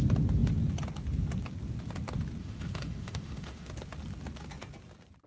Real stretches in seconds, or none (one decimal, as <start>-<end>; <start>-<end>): 0.0-2.4; 3.7-5.3

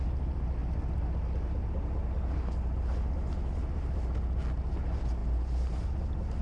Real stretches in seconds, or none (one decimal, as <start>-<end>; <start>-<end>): 0.0-6.4

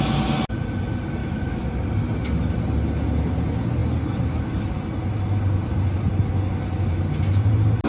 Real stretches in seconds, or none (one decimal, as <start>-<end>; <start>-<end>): 0.0-1.2; 1.7-7.9

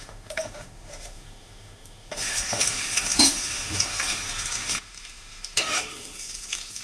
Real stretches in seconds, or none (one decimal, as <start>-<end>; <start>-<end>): none